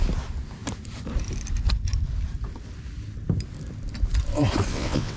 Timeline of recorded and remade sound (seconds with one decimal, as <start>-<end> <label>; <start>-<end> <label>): 0.0-4.7 recorded; 4.7-5.2 remade